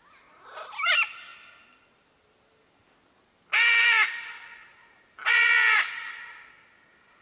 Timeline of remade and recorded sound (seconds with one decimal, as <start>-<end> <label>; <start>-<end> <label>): 0.0-7.2 recorded